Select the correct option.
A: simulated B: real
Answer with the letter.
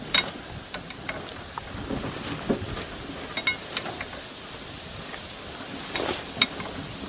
B